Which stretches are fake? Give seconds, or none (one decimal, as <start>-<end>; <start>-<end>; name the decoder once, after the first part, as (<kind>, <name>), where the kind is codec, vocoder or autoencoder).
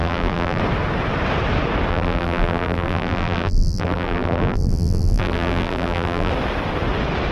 0.0-0.6 (vocoder, BigVGAN v2); 1.9-6.3